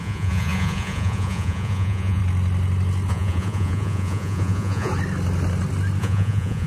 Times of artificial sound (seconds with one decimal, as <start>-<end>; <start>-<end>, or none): 0.0-2.2; 3.1-4.9; 6.0-6.7